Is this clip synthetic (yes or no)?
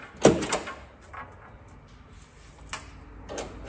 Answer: no